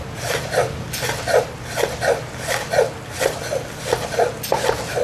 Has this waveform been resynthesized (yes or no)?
no